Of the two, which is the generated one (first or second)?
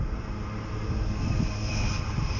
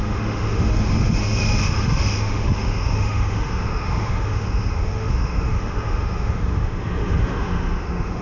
second